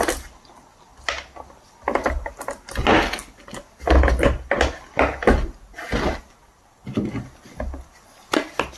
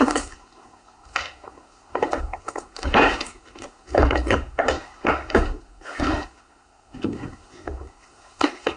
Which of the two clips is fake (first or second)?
second